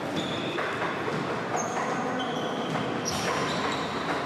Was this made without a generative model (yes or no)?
yes